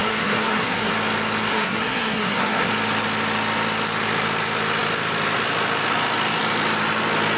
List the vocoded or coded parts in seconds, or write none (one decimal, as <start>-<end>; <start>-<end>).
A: 0.0-0.9; 1.5-2.7